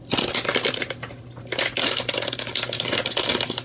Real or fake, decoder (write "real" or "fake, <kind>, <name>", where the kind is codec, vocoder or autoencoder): real